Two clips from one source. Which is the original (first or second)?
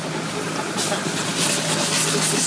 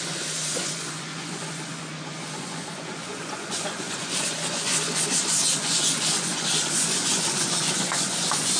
first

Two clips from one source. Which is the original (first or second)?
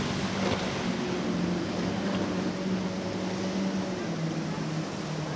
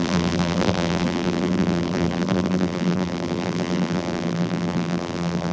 first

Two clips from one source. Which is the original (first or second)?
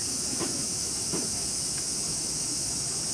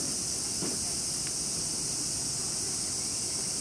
second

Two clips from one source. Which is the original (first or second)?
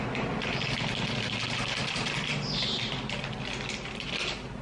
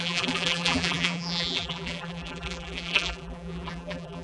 first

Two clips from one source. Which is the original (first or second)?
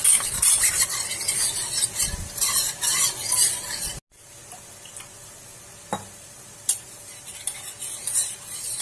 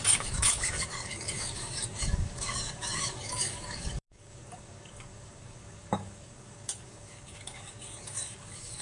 first